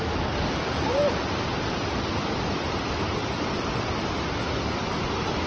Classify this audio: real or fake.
real